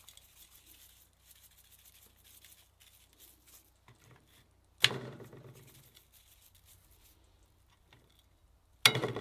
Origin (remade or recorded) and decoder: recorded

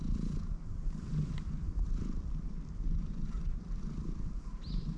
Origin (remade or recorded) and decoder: recorded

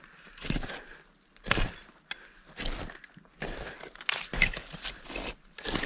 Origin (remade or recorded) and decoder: recorded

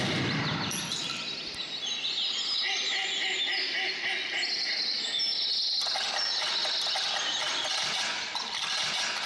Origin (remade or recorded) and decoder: recorded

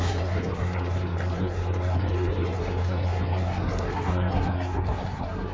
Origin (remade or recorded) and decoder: remade, codec, SNAC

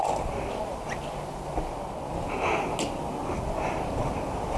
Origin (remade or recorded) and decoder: recorded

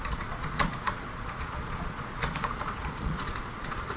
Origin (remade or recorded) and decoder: remade, vocoder, Vocos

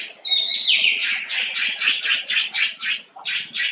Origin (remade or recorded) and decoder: recorded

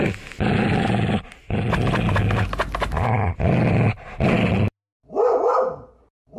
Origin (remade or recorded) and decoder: recorded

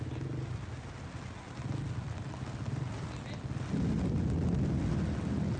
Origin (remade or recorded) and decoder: recorded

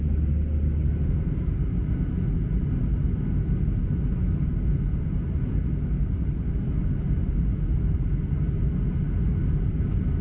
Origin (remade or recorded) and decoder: recorded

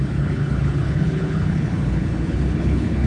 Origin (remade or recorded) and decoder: remade, codec, HILCodec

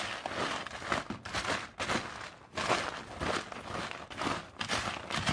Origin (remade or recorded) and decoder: recorded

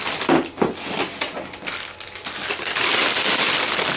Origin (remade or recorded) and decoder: recorded